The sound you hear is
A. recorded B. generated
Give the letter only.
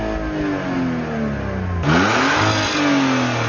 A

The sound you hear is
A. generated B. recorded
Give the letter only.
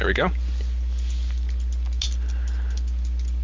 B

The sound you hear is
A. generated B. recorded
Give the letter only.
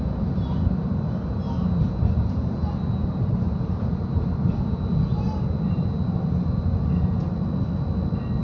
B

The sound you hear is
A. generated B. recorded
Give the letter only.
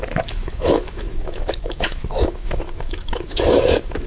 A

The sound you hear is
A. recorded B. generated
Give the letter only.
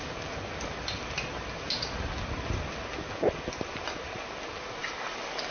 A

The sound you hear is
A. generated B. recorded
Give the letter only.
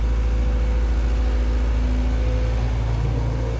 B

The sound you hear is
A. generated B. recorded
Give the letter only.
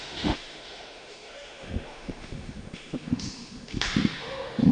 A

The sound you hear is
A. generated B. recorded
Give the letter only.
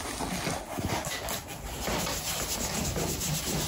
B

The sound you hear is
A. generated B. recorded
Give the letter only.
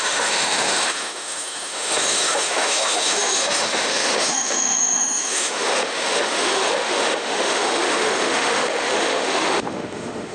A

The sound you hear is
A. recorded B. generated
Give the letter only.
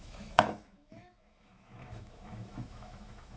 B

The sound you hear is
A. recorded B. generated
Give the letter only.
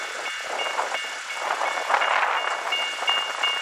A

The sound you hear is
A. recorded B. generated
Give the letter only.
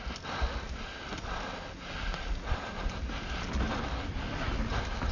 A